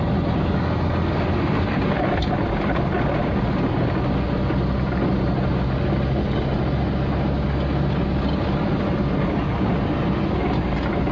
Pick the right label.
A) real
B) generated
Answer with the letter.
A